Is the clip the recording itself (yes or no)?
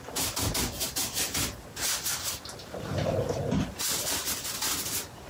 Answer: yes